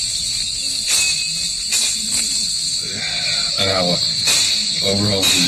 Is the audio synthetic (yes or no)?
no